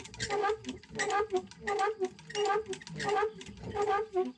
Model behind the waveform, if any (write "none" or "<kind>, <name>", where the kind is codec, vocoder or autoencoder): none